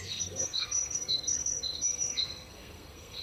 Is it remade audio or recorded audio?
remade